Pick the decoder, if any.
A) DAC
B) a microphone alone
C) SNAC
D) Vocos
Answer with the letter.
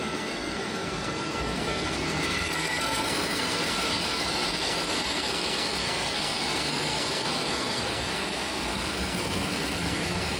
C